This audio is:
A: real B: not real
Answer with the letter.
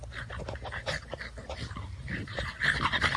A